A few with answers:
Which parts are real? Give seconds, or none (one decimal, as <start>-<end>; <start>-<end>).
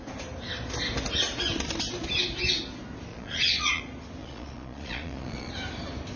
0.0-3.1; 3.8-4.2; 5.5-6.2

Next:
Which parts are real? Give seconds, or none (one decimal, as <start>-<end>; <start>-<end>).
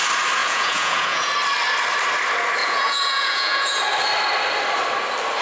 0.0-0.4; 1.3-2.6; 3.8-5.4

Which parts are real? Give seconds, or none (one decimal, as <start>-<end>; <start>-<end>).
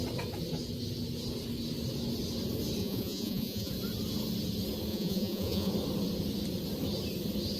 0.0-2.8; 3.7-4.9; 5.7-7.6